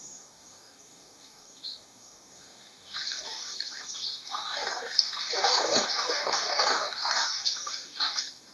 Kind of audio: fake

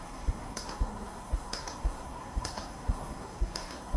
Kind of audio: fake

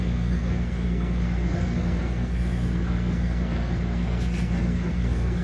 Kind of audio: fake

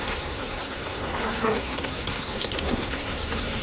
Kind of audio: fake